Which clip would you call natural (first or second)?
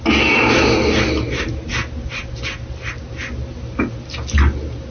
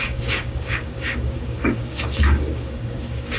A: first